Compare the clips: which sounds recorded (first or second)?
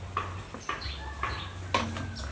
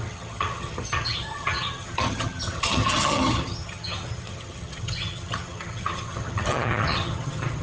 first